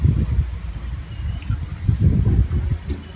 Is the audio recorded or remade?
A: recorded